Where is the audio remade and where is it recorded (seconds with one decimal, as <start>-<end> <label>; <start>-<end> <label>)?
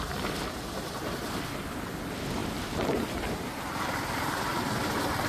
0.0-5.3 recorded